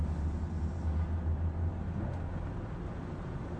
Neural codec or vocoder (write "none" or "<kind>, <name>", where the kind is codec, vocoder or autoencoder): none